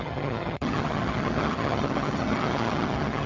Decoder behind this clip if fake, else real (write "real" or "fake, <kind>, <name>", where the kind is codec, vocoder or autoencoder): fake, vocoder, HiFi-GAN